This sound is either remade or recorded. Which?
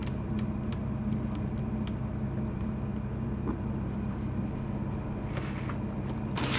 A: recorded